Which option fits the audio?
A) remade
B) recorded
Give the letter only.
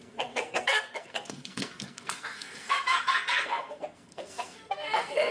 A